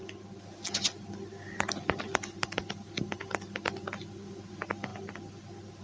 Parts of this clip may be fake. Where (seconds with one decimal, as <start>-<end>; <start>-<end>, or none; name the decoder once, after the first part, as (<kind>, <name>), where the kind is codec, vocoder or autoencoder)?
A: none

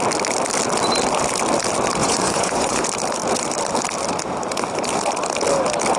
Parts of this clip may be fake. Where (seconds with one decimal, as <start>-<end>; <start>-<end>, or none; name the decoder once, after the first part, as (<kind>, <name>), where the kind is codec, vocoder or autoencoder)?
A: 2.0-2.8 (vocoder, Vocos)

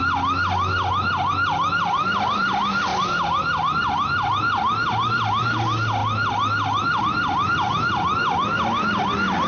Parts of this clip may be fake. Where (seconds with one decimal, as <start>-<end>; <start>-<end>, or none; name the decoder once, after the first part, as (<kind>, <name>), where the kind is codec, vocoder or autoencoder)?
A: none

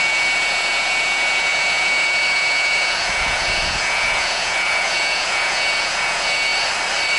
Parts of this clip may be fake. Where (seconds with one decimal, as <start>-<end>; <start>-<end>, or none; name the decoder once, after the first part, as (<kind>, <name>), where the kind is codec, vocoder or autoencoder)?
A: 0.0-6.5 (vocoder, Vocos)

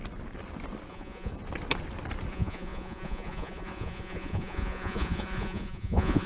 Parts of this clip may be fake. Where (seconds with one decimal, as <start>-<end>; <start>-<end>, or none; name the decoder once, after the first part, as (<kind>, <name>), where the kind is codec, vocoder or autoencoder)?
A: 0.9-1.3 (vocoder, Vocos); 2.3-6.3

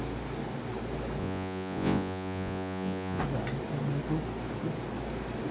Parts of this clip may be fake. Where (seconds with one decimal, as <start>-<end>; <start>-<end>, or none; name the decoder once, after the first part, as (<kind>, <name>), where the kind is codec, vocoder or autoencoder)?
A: 1.2-3.2 (vocoder, Vocos)

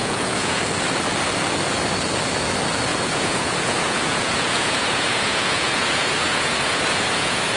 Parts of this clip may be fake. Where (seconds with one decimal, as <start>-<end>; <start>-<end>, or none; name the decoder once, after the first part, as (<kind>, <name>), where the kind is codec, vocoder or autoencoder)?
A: 0.0-0.6 (vocoder, Vocos); 2.9-7.6